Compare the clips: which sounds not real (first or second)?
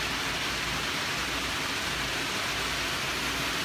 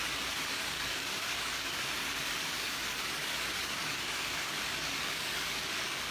second